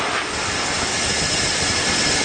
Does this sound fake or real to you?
real